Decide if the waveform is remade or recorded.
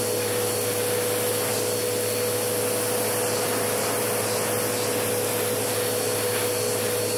recorded